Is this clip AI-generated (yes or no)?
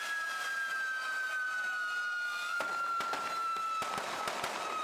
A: no